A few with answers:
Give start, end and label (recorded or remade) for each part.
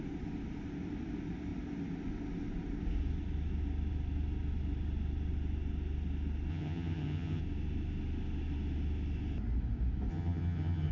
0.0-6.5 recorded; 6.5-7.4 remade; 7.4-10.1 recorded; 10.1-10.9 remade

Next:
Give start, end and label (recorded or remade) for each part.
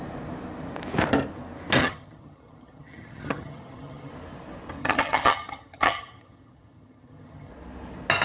0.0-1.8 recorded; 1.8-4.1 remade; 4.1-4.8 recorded; 4.8-7.5 remade; 7.5-8.2 recorded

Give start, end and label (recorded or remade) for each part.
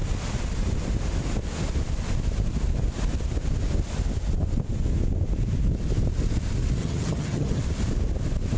0.0-6.8 recorded; 6.8-7.6 remade; 7.6-8.6 recorded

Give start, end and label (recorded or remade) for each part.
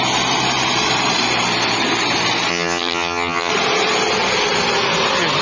0.0-2.5 recorded; 2.5-3.5 remade; 3.5-5.4 recorded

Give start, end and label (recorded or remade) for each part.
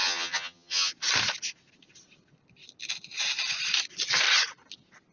0.0-0.9 remade; 0.9-5.1 recorded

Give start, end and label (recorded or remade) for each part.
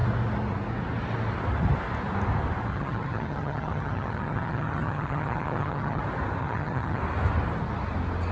0.0-2.7 recorded; 2.7-6.0 remade; 6.0-6.4 recorded; 6.4-7.0 remade; 7.0-8.3 recorded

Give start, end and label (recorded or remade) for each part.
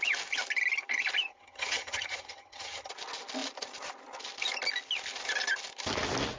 0.0-1.3 recorded; 1.3-2.9 remade; 2.9-6.4 recorded